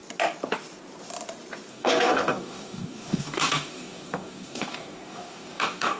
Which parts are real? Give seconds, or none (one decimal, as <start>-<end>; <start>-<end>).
0.0-1.7